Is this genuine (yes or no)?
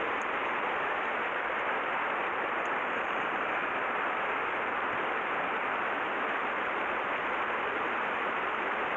yes